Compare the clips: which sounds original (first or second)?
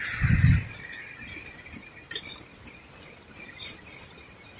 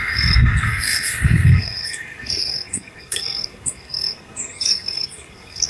first